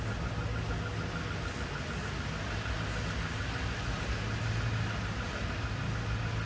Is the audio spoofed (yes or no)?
no